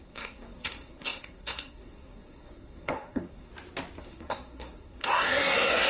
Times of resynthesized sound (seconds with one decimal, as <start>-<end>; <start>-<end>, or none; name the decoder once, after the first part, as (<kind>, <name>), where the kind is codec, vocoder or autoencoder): 0.0-3.5 (codec, SNAC); 4.0-5.9